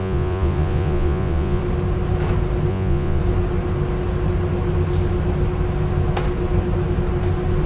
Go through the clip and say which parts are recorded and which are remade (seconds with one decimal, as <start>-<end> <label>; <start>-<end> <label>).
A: 0.0-1.6 remade; 1.6-2.7 recorded; 2.7-3.2 remade; 3.2-7.7 recorded